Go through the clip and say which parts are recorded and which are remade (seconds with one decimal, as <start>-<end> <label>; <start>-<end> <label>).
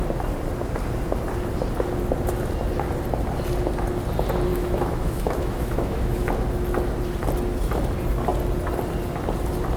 0.0-4.5 recorded; 4.5-6.3 remade; 6.3-9.8 recorded